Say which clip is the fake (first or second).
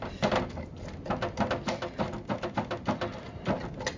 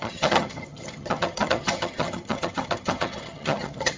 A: second